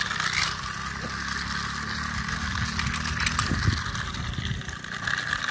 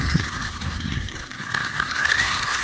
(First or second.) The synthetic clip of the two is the second